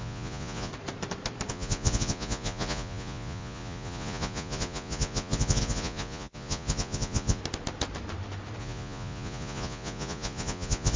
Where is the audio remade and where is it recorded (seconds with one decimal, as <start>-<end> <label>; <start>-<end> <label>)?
0.0-0.7 remade; 0.7-1.5 recorded; 1.5-7.4 remade; 7.4-8.6 recorded; 8.6-11.0 remade

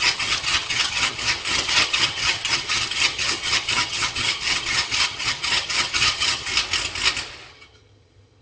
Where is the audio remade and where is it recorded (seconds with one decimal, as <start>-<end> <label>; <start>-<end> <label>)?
0.0-6.5 remade; 6.5-7.5 recorded; 7.5-8.4 remade

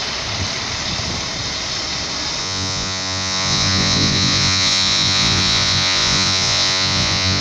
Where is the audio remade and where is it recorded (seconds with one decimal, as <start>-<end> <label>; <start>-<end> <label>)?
0.0-2.4 recorded; 2.4-7.4 remade

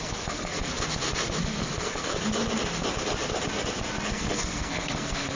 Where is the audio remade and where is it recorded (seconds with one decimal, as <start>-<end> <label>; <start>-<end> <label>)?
0.0-0.7 remade; 0.7-1.4 recorded; 1.4-2.1 remade; 2.1-4.1 recorded; 4.1-5.4 remade

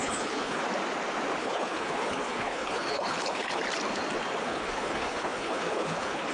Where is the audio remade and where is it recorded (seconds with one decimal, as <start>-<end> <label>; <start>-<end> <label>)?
0.0-0.6 remade; 0.6-1.4 recorded; 1.4-3.6 remade; 3.6-4.4 recorded; 4.4-6.3 remade

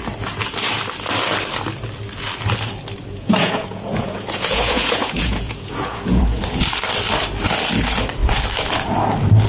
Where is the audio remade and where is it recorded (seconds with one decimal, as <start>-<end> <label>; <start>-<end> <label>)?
0.0-3.0 recorded; 3.0-6.4 remade; 6.4-9.5 recorded

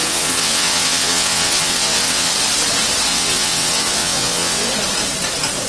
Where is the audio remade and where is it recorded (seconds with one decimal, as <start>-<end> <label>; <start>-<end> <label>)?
0.0-2.3 remade; 2.3-3.1 recorded; 3.1-4.7 remade; 4.7-5.7 recorded